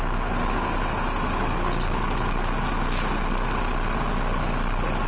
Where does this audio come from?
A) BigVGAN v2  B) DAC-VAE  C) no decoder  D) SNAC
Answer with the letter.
C